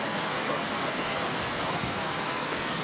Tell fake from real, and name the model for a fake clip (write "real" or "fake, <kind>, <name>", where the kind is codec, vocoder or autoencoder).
fake, codec, SNAC